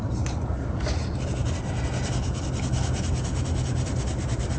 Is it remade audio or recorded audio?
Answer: recorded